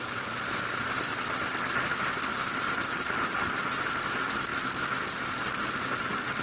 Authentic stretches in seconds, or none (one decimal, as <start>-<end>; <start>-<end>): 1.1-3.9